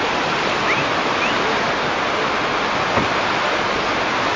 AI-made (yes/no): no